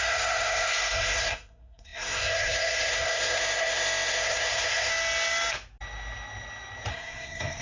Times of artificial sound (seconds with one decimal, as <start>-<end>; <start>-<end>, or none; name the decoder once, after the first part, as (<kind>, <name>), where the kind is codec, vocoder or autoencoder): 0.0-4.9 (codec, SNAC); 6.9-7.6